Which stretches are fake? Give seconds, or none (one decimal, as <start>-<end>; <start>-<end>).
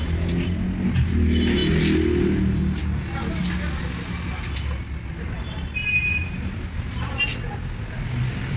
5.8-7.2